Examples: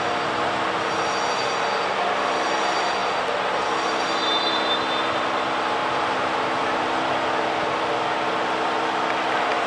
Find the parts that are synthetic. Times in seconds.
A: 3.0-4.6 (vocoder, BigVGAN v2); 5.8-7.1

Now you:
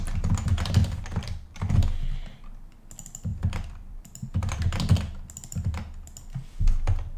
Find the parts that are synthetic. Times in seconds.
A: 0.8-1.7 (vocoder, BigVGAN v2); 3.3-4.0

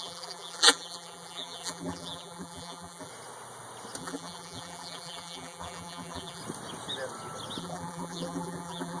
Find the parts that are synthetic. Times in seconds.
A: 0.0-3.1 (vocoder, BigVGAN v2); 4.0-6.4; 7.6-9.0